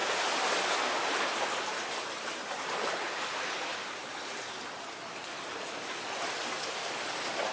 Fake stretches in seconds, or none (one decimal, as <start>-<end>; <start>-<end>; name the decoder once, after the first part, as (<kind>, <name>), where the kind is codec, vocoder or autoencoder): none